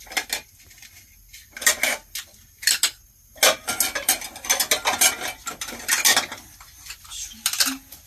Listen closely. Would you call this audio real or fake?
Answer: real